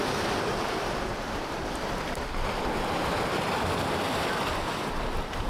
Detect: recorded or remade recorded